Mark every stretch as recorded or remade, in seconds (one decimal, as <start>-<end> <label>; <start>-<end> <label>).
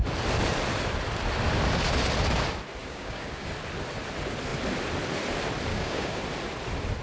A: 0.0-2.8 recorded; 2.8-3.5 remade; 3.5-5.7 recorded; 5.7-6.2 remade; 6.2-7.0 recorded